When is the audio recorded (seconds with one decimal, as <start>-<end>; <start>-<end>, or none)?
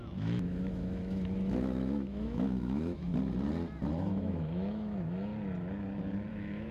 3.1-4.0; 5.3-6.3